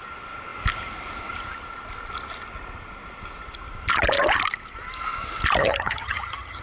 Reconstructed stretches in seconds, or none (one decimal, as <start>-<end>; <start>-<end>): 5.6-6.6